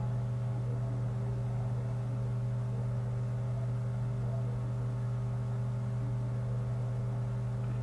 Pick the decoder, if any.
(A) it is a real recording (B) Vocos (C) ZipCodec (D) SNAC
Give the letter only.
A